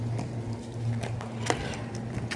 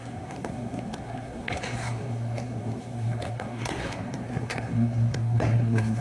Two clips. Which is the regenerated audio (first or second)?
second